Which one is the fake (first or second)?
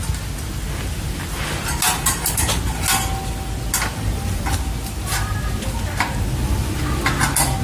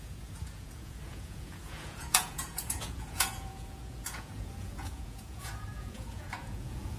second